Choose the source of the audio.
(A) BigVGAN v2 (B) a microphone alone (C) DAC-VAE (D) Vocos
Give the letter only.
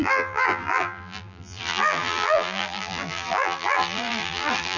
A